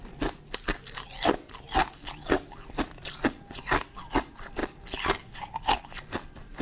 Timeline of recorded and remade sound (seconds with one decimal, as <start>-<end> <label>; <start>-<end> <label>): 0.0-6.6 recorded